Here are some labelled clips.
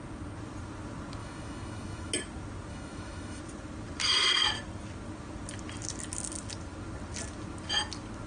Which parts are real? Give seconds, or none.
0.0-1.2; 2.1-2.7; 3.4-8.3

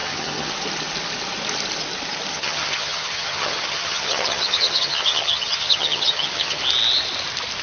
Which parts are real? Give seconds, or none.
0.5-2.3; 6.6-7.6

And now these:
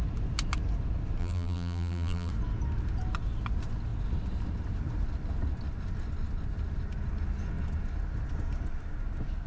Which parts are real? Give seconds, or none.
0.0-1.2; 2.3-9.5